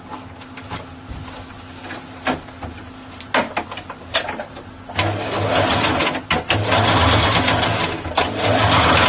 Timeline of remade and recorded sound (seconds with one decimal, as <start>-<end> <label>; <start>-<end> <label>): 0.0-9.1 recorded